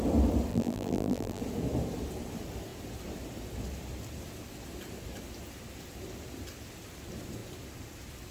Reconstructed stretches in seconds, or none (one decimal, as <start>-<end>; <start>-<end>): 0.5-1.4